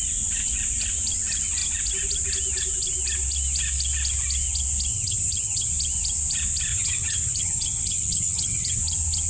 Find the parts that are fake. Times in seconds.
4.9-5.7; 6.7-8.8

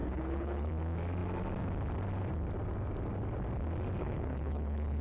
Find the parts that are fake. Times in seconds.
0.0-0.7; 4.0-5.0

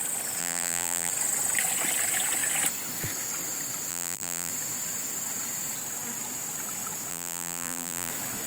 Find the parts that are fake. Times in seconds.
0.4-1.1; 3.9-4.5; 7.1-8.1

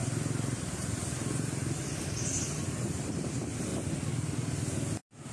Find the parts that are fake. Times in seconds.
none

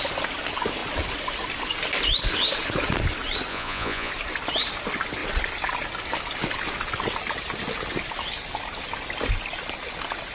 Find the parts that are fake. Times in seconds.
3.5-4.1

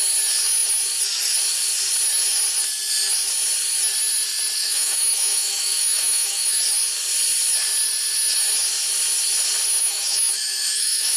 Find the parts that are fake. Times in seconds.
4.6-6.6; 9.8-11.2

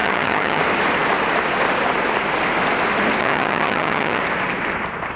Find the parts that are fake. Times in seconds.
0.0-0.6; 3.2-4.2